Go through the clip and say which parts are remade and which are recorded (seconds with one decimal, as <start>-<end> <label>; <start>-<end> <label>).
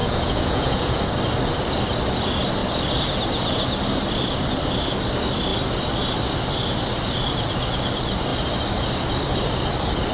0.0-1.0 remade; 1.0-10.1 recorded